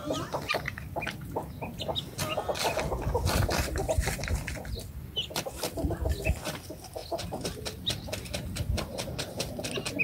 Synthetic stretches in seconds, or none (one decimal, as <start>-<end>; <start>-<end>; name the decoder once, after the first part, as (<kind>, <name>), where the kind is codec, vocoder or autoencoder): none